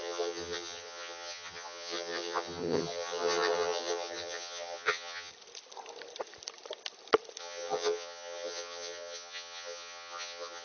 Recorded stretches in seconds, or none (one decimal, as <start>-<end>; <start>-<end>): 5.3-7.4